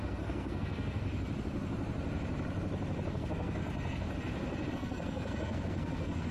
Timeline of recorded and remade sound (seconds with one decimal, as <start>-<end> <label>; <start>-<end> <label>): 0.0-1.0 remade; 1.0-3.1 recorded; 3.1-3.6 remade; 3.6-4.7 recorded; 4.7-6.3 remade